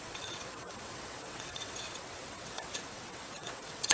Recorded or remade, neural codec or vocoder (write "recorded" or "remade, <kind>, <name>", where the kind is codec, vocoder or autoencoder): remade, vocoder, WaveNeXt